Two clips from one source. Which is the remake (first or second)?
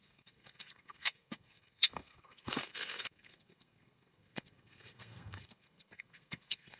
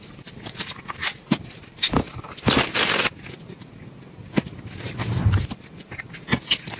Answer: first